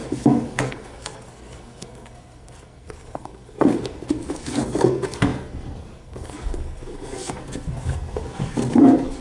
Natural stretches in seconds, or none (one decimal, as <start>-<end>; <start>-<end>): none